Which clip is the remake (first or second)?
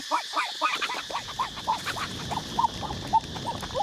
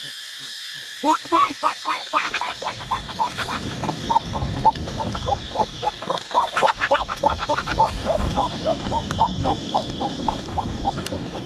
second